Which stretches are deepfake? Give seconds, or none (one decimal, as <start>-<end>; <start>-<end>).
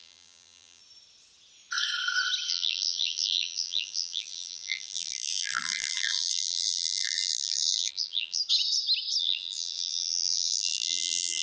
0.0-0.8; 2.5-8.4; 9.2-11.4